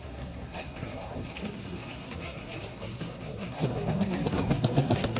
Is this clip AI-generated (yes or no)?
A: yes